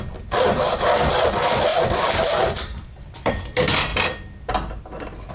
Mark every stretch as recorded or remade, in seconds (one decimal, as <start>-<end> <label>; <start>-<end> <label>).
0.0-1.7 recorded; 1.7-3.3 remade; 3.3-5.3 recorded

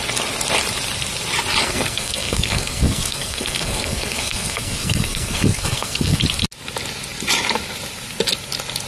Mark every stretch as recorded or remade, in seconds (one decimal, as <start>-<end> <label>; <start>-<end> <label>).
0.0-1.6 recorded; 1.6-6.2 remade; 6.2-8.9 recorded